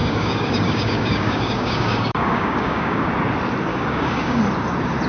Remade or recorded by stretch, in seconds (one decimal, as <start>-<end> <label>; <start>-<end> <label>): 0.0-3.1 remade; 3.1-3.7 recorded; 3.7-4.4 remade; 4.4-5.1 recorded